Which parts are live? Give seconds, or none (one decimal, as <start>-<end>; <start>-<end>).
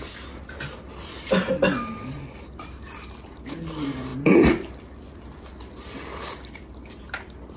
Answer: 0.0-7.6